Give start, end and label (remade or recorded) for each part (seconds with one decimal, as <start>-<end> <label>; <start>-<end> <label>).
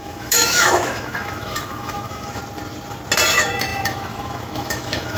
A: 0.0-2.4 remade; 2.4-3.3 recorded; 3.3-5.2 remade